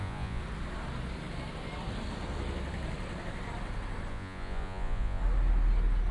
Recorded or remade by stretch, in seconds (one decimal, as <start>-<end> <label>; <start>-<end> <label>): 0.0-0.4 remade; 0.4-4.1 recorded; 4.1-5.2 remade; 5.2-6.1 recorded